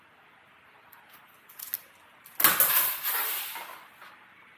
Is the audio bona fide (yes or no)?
yes